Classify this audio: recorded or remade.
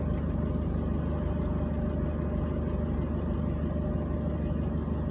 recorded